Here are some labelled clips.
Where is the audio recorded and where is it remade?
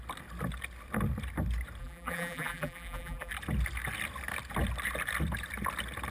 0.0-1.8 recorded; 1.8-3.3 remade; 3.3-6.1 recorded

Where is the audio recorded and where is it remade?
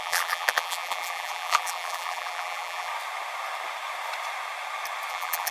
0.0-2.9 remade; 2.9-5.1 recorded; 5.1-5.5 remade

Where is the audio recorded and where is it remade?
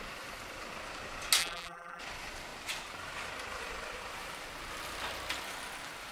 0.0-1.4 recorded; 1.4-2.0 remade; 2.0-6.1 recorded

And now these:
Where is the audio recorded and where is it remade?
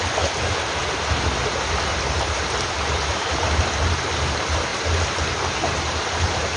0.0-0.8 recorded; 0.8-4.1 remade; 4.1-4.7 recorded; 4.7-6.6 remade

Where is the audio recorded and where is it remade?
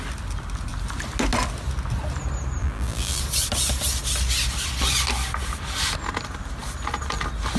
0.0-2.6 recorded; 2.6-3.2 remade; 3.2-7.6 recorded